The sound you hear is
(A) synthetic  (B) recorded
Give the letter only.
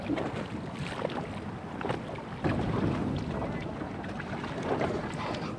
B